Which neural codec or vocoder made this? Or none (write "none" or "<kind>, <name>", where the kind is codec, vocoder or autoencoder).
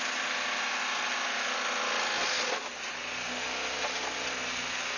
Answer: none